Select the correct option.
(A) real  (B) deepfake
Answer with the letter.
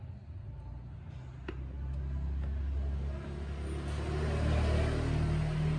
A